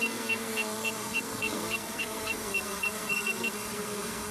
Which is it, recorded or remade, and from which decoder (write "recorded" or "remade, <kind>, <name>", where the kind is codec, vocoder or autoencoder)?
remade, codec, SNAC